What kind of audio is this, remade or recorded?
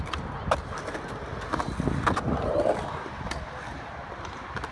recorded